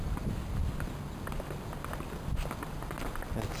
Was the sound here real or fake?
real